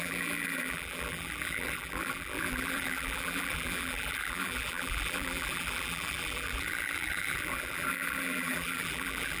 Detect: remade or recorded remade